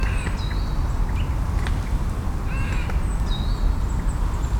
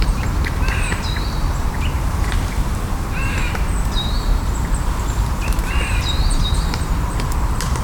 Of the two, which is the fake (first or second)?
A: second